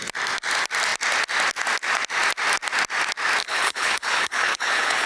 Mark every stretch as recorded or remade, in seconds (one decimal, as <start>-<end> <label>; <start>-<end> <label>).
0.0-3.4 recorded; 3.4-5.1 remade